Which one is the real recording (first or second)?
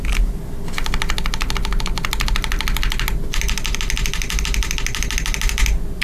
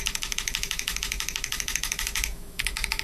first